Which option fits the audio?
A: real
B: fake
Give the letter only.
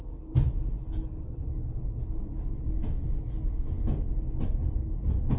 A